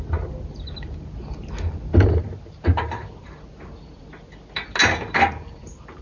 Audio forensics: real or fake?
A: real